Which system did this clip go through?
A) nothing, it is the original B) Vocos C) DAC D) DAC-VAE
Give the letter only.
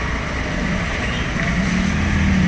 A